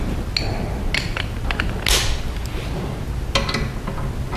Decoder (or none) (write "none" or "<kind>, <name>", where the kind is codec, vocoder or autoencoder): none